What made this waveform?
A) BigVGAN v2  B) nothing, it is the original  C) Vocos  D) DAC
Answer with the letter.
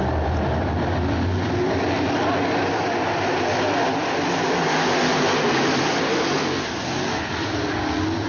B